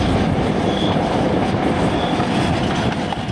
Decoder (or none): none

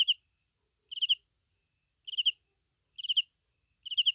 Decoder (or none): none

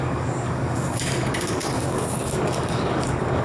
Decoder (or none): codec, DAC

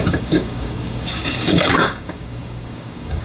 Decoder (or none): codec, DAC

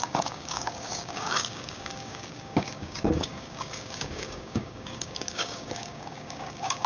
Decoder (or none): codec, DAC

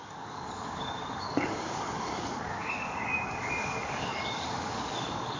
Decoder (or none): codec, DAC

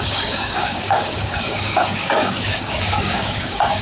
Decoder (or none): codec, DAC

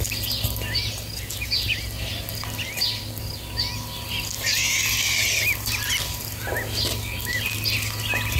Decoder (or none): none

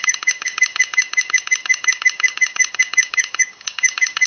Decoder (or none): codec, DAC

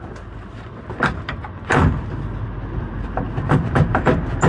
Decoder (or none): none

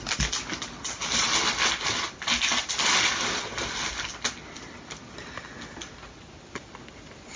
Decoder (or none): none